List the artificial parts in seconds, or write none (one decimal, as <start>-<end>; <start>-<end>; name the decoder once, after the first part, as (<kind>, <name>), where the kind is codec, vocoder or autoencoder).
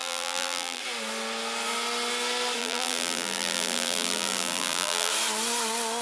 0.0-0.8 (vocoder, BigVGAN v2); 2.6-5.1